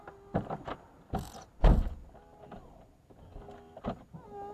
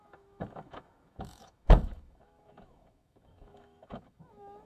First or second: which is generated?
second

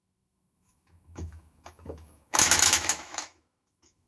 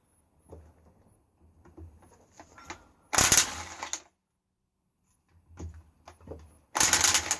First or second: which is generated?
first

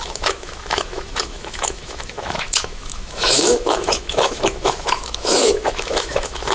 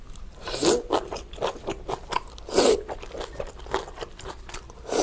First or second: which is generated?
first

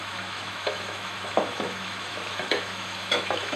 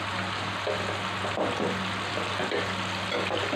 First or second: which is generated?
first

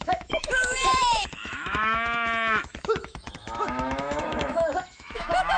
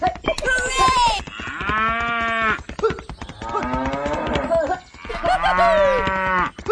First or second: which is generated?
first